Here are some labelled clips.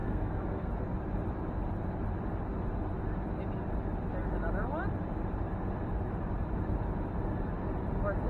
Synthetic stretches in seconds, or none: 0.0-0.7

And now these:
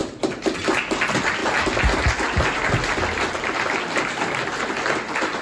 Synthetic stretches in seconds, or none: none